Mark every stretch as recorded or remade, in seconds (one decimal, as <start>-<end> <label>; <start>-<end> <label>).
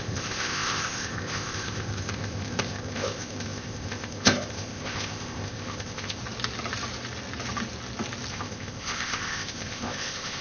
0.0-6.2 remade; 6.2-8.3 recorded; 8.3-10.4 remade